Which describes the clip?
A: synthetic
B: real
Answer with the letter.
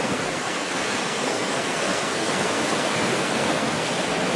A